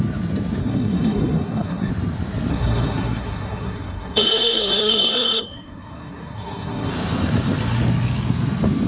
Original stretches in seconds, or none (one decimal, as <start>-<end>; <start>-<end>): 0.0-0.6; 1.9-2.5; 6.9-8.9